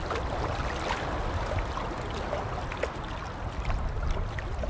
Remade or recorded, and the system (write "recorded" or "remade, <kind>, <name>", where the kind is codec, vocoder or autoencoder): recorded